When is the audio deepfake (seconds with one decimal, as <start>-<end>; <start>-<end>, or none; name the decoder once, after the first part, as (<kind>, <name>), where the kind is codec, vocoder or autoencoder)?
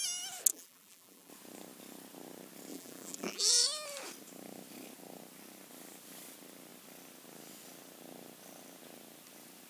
0.5-1.3 (vocoder, BigVGAN v2); 2.7-3.6